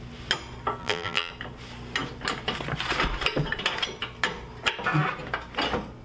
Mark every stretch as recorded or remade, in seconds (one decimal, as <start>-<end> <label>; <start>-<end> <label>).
0.0-0.8 recorded; 0.8-1.3 remade; 1.3-6.0 recorded